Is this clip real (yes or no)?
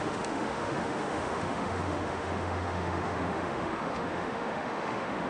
no